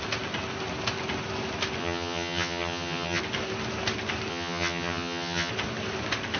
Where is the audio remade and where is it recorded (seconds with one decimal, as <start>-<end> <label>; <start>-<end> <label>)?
0.0-1.8 recorded; 1.8-3.2 remade; 3.2-4.3 recorded; 4.3-5.5 remade; 5.5-6.4 recorded